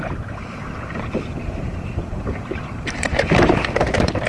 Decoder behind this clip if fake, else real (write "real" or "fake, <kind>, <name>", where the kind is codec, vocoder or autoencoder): fake, vocoder, BigVGAN v2